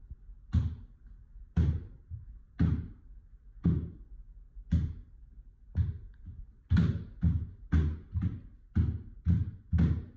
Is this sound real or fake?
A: real